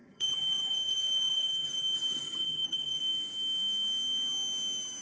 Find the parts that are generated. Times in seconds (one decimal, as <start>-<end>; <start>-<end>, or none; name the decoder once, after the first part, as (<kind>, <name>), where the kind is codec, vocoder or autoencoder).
0.0-3.0 (vocoder, HiFi-GAN)

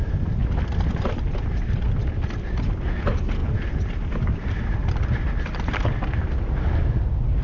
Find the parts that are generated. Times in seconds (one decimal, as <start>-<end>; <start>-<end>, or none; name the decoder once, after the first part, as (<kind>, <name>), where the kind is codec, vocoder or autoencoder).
none

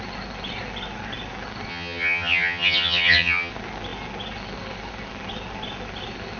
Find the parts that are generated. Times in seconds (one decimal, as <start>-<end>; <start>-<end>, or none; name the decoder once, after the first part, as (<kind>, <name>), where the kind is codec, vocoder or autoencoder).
1.7-3.5 (vocoder, HiFi-GAN)

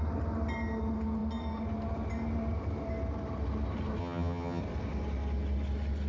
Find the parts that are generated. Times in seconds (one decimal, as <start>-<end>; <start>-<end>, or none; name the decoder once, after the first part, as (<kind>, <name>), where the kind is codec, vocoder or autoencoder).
4.0-4.6 (vocoder, HiFi-GAN)

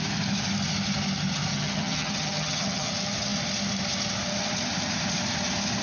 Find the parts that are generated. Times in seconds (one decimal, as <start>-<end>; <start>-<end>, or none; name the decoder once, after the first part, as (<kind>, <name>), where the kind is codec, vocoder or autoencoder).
1.5-2.9 (vocoder, HiFi-GAN)

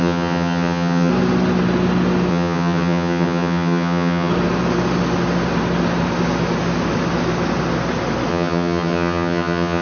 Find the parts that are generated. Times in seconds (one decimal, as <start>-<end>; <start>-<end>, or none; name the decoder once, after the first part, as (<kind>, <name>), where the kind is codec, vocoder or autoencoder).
0.0-1.1 (vocoder, HiFi-GAN); 2.3-4.3; 8.3-9.8

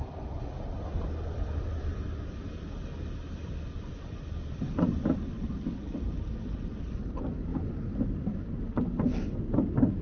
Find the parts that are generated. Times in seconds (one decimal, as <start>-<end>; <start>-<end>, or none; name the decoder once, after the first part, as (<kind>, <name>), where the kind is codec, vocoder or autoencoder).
none